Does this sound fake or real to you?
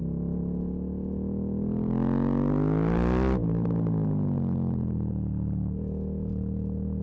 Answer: real